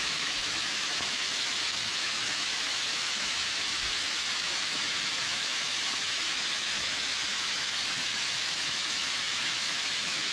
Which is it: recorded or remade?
remade